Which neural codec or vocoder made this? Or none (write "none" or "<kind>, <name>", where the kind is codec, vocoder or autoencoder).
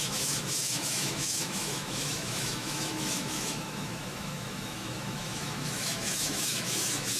autoencoder, DAC-VAE